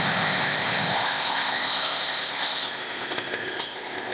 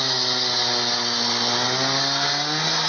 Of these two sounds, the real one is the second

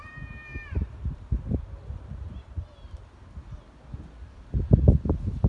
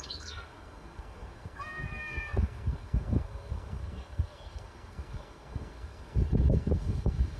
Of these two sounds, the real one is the first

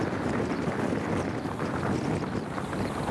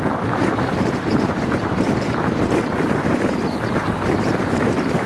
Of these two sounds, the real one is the first